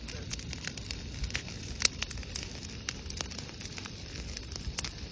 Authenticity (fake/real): real